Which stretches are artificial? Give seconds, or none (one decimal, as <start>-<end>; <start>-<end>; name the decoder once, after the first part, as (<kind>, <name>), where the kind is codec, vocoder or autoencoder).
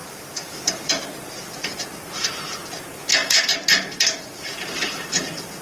0.0-5.6 (vocoder, BigVGAN v2)